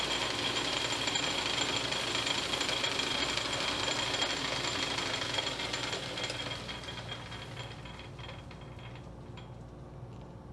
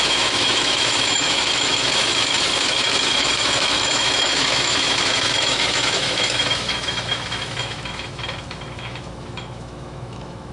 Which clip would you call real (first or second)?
first